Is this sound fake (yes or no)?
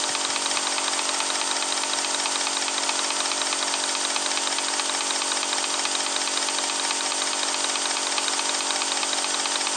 no